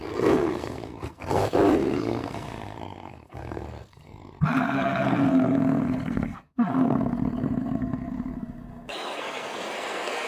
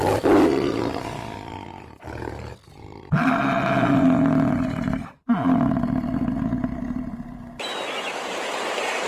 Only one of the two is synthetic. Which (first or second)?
first